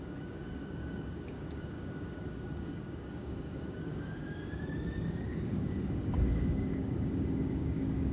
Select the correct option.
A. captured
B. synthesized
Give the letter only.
B